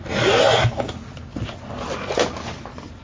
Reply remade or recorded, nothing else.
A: recorded